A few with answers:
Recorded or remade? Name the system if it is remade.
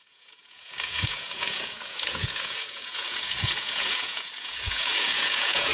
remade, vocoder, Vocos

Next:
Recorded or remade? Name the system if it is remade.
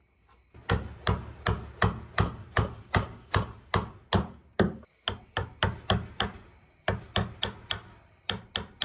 recorded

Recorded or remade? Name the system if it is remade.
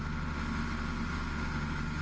recorded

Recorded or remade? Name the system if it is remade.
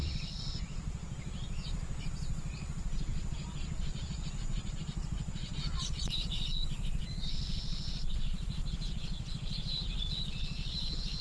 remade, vocoder, Vocos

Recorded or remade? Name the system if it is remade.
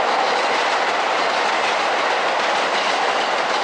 recorded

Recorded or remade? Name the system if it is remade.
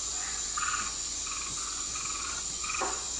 remade, vocoder, Vocos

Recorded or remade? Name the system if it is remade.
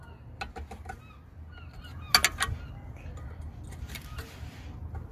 recorded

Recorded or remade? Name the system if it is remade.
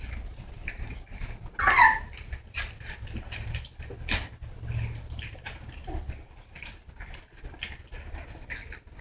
recorded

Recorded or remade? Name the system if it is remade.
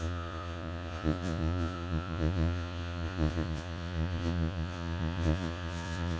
remade, vocoder, Vocos